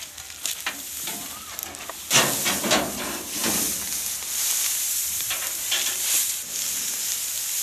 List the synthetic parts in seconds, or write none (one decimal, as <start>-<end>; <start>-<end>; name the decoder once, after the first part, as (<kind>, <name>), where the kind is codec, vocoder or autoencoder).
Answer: none